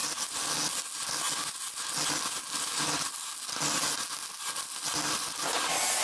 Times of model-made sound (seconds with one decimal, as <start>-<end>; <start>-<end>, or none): none